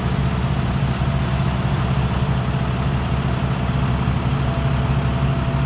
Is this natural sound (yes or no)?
yes